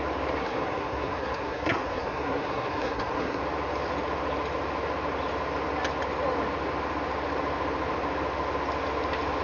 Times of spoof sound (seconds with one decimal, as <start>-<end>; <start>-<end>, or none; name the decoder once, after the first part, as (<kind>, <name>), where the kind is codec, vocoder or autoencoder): 0.4-3.4 (codec, SNAC)